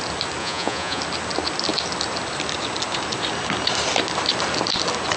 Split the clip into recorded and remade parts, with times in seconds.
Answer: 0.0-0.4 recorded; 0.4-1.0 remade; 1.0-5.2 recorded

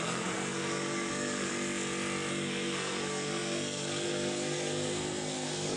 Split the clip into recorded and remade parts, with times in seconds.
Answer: 0.0-1.5 remade; 1.5-2.3 recorded; 2.3-5.8 remade

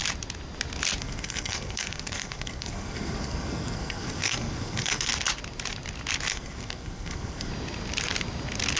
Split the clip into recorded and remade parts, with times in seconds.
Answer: 0.0-1.0 recorded; 1.0-5.1 remade; 5.1-6.3 recorded; 6.3-7.5 remade; 7.5-8.8 recorded

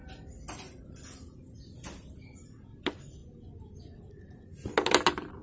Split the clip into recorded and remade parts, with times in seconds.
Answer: 0.0-5.4 recorded

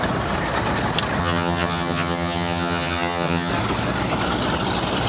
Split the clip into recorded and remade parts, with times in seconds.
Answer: 0.0-1.2 recorded; 1.2-3.5 remade; 3.5-5.1 recorded

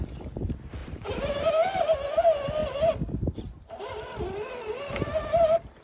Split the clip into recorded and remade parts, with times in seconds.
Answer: 0.0-0.8 recorded; 0.8-1.5 remade; 1.5-5.8 recorded

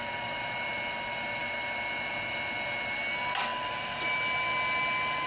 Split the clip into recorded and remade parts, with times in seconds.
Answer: 0.0-5.3 recorded